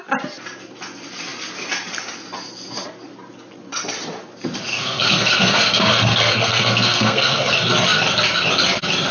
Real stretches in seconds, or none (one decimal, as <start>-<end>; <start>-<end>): 0.0-4.7; 7.5-9.1